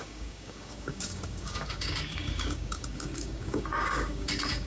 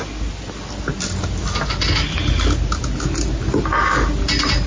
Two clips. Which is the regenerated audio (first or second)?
first